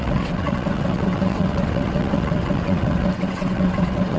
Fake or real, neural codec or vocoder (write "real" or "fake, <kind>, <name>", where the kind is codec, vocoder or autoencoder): fake, vocoder, WaveNeXt